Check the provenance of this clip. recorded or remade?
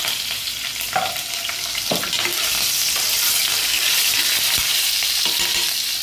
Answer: recorded